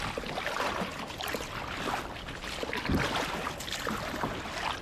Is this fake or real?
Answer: real